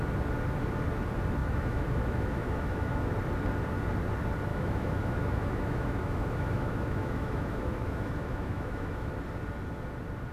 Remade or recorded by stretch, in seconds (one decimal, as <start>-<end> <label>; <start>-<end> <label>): 0.0-1.4 recorded; 1.4-3.1 remade; 3.1-4.5 recorded; 4.5-9.1 remade; 9.1-10.3 recorded